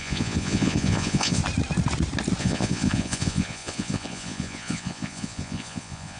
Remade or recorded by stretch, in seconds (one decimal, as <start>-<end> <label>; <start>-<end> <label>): 0.0-1.4 remade; 1.4-2.4 recorded; 2.4-6.2 remade